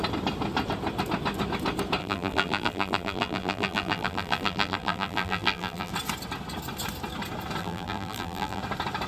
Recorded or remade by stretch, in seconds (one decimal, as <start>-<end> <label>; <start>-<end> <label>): 0.0-2.0 recorded; 2.0-5.9 remade; 5.9-7.6 recorded; 7.6-8.6 remade; 8.6-9.1 recorded